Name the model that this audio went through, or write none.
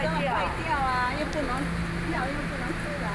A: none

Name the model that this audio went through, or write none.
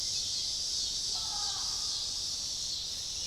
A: none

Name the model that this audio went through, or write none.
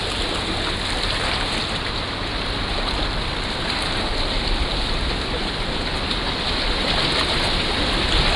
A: none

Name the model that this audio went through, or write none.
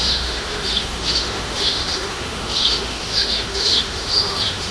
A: autoencoder, DAC-VAE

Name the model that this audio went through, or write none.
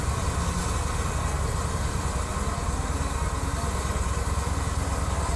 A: none